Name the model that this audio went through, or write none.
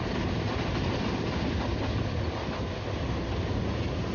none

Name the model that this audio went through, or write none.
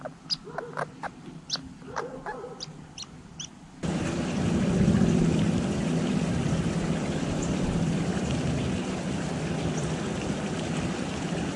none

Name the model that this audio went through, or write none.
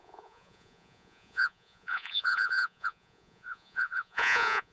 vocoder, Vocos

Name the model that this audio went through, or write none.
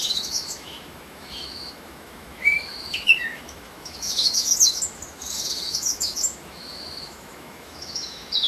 autoencoder, DAC-VAE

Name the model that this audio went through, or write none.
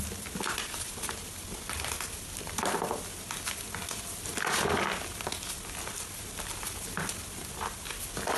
none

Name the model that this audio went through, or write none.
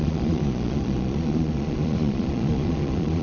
vocoder, Vocos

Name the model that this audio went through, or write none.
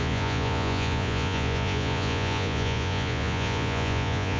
vocoder, Vocos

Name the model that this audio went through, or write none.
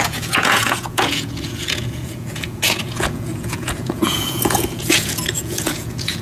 vocoder, Vocos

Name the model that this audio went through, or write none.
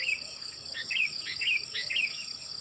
codec, DAC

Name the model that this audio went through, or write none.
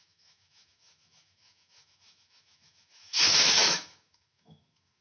autoencoder, DAC-VAE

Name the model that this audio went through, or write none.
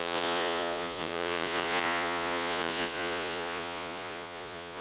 vocoder, Vocos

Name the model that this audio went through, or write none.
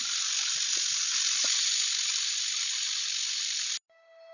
none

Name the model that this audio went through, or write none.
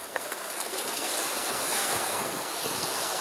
codec, SNAC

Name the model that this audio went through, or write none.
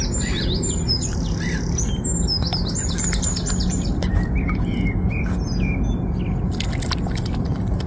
none